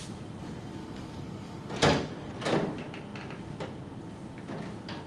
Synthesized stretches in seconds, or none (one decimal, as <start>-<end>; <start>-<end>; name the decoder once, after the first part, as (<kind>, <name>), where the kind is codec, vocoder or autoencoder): 0.8-1.7 (codec, DAC)